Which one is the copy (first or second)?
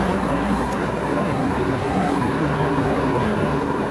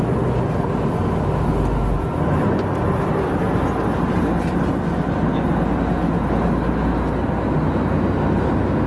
first